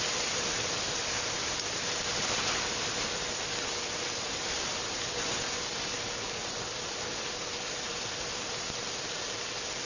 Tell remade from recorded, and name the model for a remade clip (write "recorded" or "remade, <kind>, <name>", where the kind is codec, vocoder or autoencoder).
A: remade, vocoder, BigVGAN v2